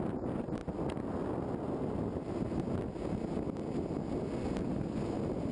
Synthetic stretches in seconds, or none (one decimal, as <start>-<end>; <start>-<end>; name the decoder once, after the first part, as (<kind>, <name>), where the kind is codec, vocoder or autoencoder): none